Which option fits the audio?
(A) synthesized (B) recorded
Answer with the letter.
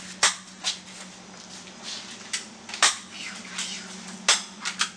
B